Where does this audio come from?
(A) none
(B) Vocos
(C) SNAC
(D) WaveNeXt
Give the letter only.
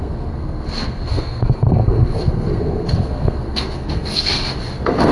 C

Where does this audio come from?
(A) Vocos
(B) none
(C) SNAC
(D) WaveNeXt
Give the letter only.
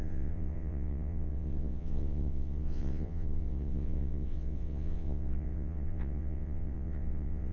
D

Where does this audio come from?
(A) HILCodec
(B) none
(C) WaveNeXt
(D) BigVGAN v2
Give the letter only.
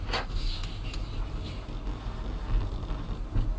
B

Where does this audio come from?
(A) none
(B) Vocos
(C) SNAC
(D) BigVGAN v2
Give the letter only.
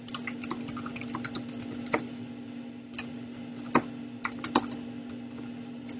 A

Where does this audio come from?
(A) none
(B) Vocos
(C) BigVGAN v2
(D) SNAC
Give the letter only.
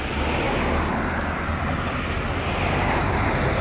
A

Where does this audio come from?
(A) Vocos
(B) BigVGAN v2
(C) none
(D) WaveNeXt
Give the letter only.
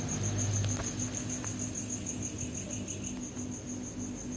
C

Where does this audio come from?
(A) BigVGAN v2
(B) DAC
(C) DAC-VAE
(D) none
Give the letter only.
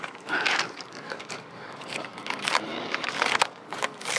B